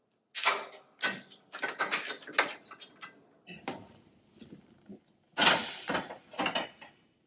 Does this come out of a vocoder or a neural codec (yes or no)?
no